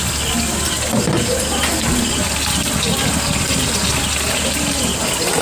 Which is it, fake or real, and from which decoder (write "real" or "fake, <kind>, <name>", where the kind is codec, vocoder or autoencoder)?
real